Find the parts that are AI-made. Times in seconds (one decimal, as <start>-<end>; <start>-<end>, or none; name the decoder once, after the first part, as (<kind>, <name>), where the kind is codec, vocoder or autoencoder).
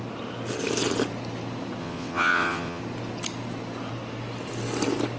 1.8-2.8 (vocoder, WaveNeXt)